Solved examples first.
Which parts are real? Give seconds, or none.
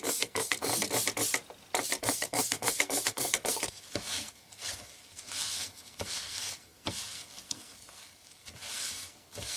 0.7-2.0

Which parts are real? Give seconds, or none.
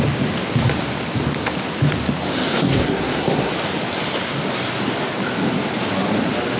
0.0-2.5; 3.5-6.6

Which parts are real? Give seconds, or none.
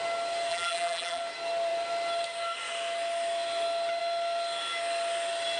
0.0-0.5; 1.2-5.6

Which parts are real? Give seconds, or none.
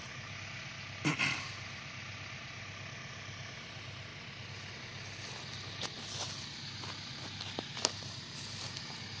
0.0-9.2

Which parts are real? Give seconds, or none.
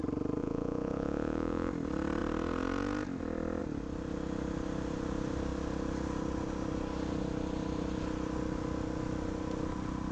0.0-0.4; 1.7-10.1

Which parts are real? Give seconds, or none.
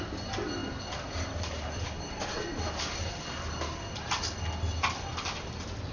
0.0-5.9